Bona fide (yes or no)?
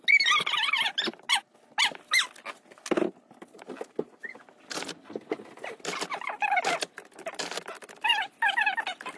yes